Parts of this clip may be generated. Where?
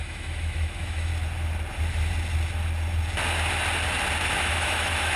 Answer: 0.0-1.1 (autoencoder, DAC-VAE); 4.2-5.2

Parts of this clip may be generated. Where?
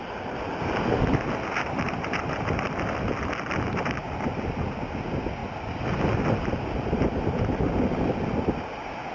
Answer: none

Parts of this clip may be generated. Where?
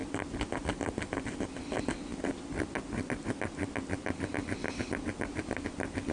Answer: none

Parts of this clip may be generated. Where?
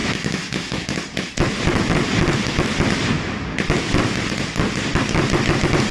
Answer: 0.0-1.0 (autoencoder, DAC-VAE)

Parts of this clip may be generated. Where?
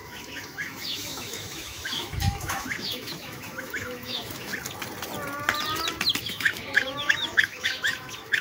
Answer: 0.0-4.5 (autoencoder, DAC-VAE); 6.2-8.4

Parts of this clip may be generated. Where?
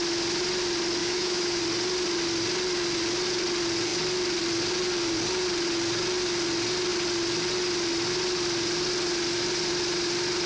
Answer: 1.0-1.6 (autoencoder, DAC-VAE)